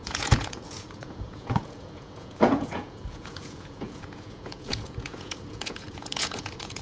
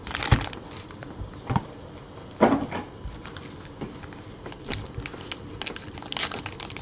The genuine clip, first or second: second